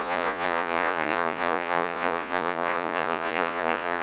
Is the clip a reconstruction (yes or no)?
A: yes